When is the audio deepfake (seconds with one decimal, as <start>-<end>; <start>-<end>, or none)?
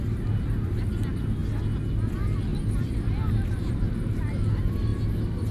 2.5-3.9